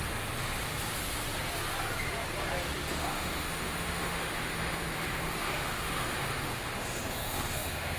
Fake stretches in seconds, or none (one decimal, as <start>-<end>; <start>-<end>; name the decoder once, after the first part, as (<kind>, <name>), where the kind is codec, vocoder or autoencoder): 3.0-8.0 (autoencoder, DAC-VAE)

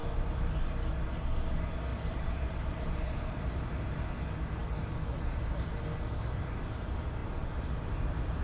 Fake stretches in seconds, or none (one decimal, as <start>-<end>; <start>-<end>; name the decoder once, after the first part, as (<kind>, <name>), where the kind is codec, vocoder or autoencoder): 0.0-0.6 (vocoder, BigVGAN v2); 1.9-4.1

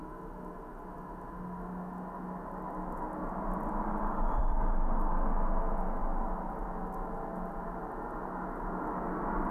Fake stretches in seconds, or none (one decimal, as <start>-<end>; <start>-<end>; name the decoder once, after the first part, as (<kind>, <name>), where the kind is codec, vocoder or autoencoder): none

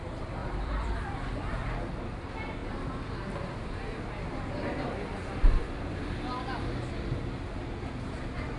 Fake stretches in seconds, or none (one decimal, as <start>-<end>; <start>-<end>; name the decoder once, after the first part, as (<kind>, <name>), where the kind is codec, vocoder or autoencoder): 0.4-1.6 (vocoder, BigVGAN v2)

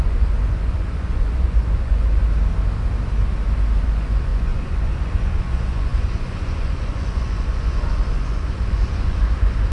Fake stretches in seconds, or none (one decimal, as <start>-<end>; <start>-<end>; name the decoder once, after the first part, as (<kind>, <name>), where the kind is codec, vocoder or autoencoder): 0.0-2.2 (vocoder, Vocos); 3.8-9.7

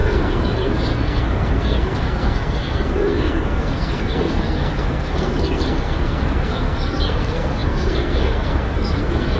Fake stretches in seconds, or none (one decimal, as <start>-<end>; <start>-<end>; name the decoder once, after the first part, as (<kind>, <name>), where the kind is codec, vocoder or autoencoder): 0.0-9.4 (codec, SNAC)

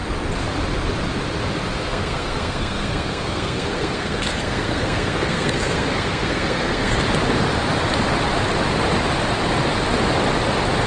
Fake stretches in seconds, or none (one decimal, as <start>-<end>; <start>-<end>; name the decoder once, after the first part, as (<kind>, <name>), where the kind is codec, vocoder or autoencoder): 1.8-7.0 (codec, SNAC)